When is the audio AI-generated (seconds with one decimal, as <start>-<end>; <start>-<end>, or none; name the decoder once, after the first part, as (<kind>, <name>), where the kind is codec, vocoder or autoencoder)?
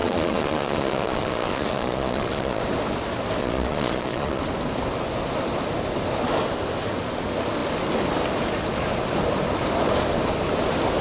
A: 0.0-2.6 (vocoder, Vocos); 3.4-4.4